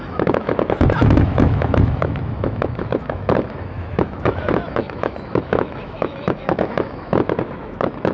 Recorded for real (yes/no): no